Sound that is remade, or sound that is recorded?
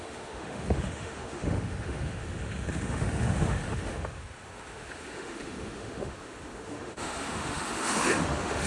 remade